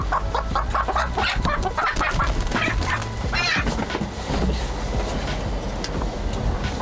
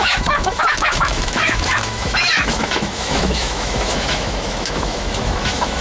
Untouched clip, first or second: first